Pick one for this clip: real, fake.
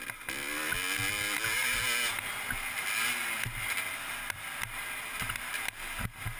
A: real